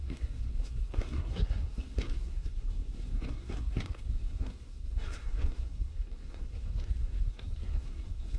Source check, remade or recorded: remade